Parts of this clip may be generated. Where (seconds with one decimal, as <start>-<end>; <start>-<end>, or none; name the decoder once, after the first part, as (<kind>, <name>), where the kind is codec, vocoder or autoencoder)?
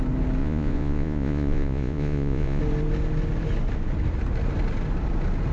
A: 0.4-2.6 (vocoder, Vocos)